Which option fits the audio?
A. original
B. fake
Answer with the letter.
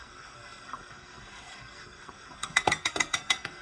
B